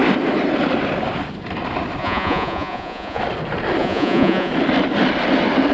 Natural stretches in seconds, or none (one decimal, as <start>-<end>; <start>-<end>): 0.0-2.0; 3.2-3.8; 4.5-5.7